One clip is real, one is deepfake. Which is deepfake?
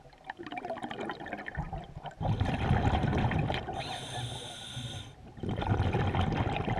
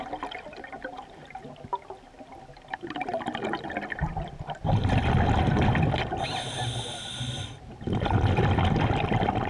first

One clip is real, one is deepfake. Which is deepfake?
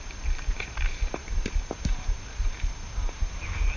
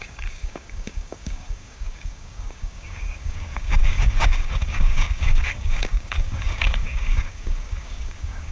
second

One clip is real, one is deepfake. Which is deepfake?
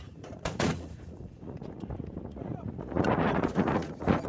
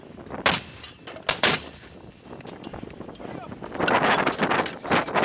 first